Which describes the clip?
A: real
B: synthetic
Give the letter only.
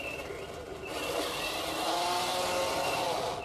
A